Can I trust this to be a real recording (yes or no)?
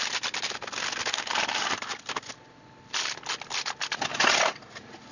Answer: yes